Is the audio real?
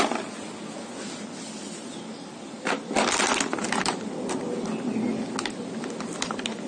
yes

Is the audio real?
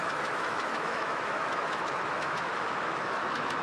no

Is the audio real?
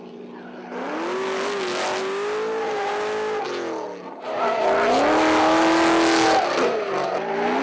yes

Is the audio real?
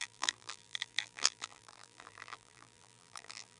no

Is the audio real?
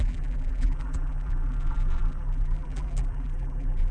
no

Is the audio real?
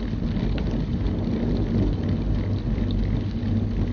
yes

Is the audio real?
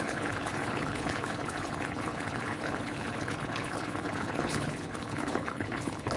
no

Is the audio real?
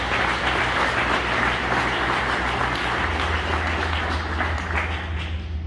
yes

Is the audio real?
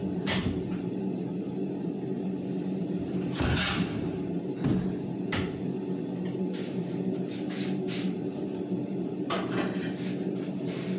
no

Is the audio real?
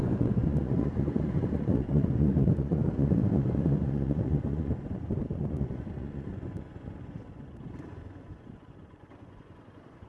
no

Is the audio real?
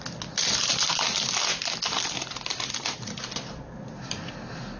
yes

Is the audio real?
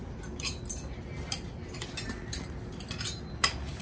yes